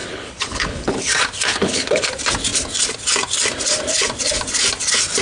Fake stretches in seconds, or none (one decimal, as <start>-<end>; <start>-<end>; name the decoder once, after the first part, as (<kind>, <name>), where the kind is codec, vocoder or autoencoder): 0.0-1.0 (codec, HILCodec); 1.5-2.1